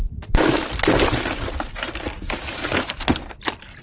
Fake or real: real